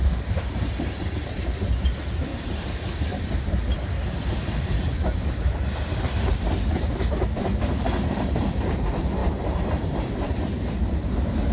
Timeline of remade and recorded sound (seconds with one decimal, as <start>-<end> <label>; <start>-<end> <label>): 0.0-11.5 remade

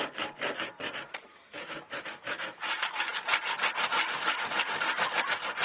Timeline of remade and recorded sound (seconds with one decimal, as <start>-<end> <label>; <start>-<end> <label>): 0.0-1.3 recorded; 1.3-2.6 remade; 2.6-5.6 recorded

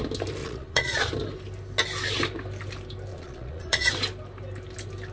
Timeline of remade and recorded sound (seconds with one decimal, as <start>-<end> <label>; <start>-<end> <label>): 0.0-0.4 recorded; 0.4-1.1 remade; 1.1-3.1 recorded; 3.1-3.9 remade; 3.9-5.1 recorded

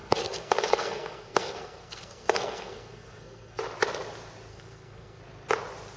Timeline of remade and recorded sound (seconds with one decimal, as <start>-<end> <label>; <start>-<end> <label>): 0.0-3.6 remade; 3.6-4.5 recorded; 4.5-5.2 remade; 5.2-6.0 recorded

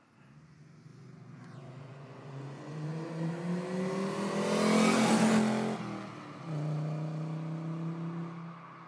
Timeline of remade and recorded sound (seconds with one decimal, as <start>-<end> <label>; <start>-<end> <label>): 0.0-0.9 recorded; 0.9-3.3 remade; 3.3-8.9 recorded